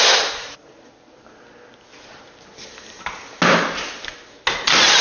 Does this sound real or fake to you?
real